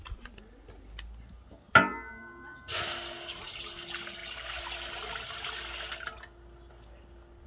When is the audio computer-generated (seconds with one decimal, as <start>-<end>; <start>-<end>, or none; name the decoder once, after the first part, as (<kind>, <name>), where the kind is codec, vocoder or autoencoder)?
none